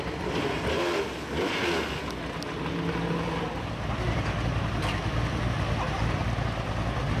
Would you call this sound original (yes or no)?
yes